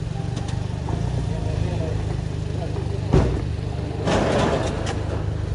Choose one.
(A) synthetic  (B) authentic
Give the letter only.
B